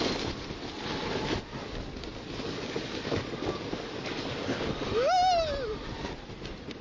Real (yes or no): yes